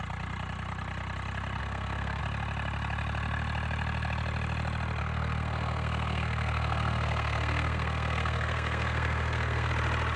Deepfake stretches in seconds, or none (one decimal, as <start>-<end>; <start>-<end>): 1.6-2.2; 5.0-9.7